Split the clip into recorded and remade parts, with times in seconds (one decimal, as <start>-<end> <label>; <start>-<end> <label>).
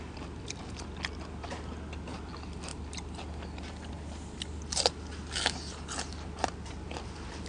0.0-7.5 recorded